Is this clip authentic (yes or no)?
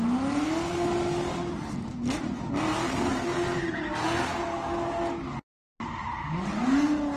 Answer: yes